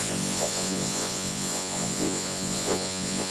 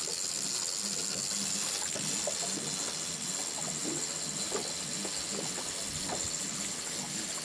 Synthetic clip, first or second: first